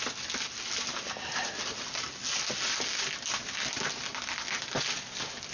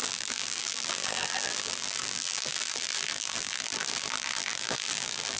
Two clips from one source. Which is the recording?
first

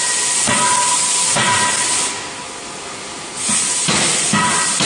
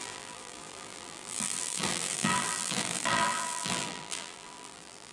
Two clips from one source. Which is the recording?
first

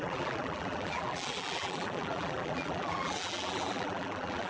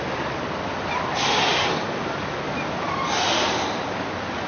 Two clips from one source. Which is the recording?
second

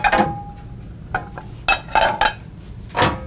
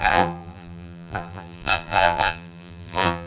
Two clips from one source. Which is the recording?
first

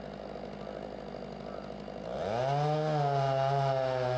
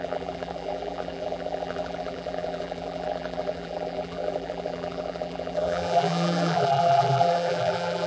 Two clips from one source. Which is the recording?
first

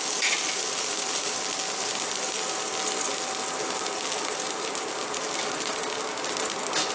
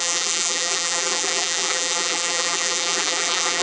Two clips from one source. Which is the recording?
first